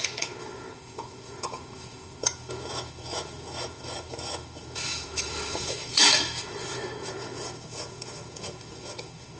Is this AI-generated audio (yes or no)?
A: yes